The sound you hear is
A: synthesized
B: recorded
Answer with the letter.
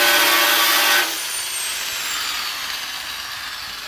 B